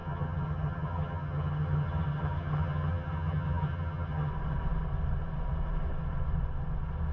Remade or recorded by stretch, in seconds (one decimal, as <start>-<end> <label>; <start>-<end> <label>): 0.0-4.3 remade; 4.3-7.1 recorded